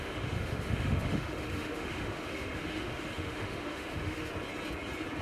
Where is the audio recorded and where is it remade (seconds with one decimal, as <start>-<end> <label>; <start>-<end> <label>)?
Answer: 0.0-4.3 remade; 4.3-5.2 recorded